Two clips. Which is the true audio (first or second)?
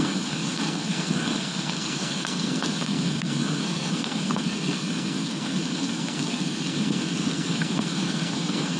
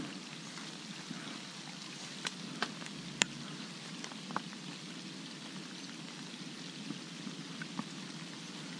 second